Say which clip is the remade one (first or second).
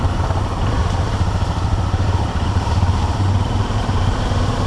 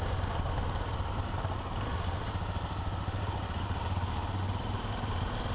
first